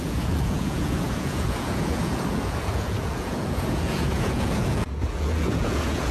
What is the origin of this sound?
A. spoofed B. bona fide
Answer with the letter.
A